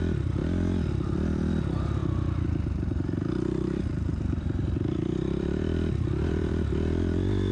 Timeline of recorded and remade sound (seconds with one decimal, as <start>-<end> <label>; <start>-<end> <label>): 0.0-0.4 recorded; 0.4-1.5 remade; 1.5-2.0 recorded; 2.0-6.5 remade; 6.5-7.5 recorded